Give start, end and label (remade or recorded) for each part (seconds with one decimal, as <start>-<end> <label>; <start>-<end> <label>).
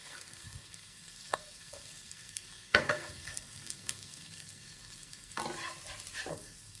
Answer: 0.0-5.4 remade; 5.4-6.3 recorded; 6.3-6.8 remade